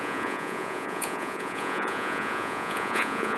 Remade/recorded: remade